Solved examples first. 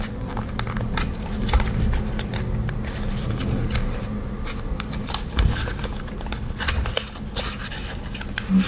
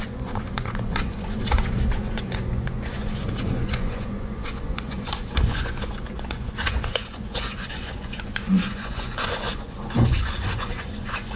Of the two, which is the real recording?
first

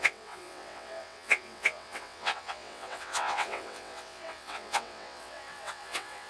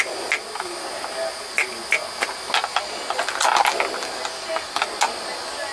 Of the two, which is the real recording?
second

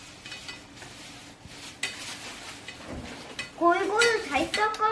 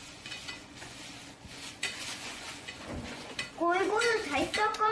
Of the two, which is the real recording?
first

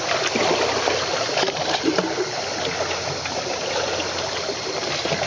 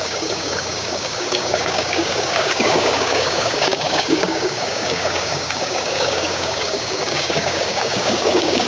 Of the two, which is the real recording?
first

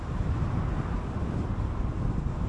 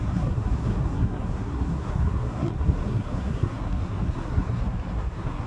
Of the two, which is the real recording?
first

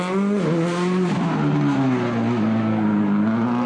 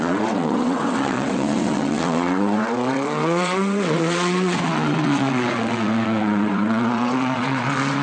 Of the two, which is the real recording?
first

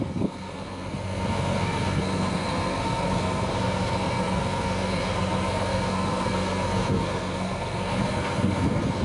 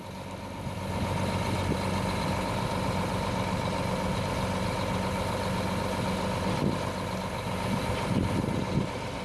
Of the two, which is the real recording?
second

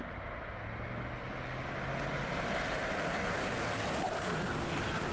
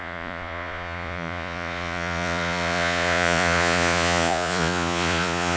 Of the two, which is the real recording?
first